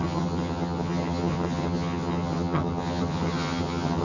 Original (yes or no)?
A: no